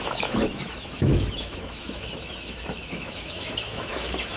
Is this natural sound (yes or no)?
no